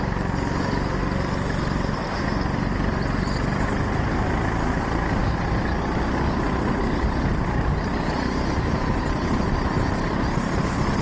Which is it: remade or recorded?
recorded